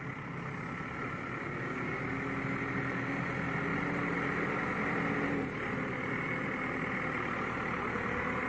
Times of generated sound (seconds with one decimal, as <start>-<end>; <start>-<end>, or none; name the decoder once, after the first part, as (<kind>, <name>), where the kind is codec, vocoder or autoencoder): 1.4-2.0 (codec, DAC)